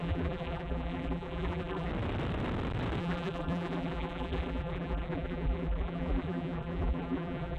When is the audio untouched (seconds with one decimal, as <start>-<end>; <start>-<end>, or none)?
1.9-3.0